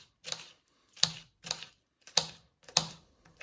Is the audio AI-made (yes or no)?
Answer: no